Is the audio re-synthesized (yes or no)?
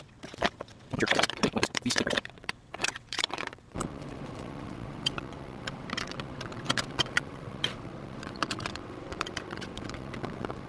yes